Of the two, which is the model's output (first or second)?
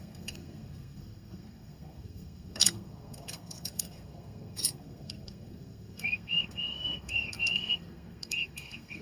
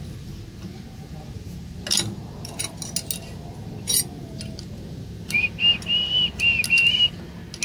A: first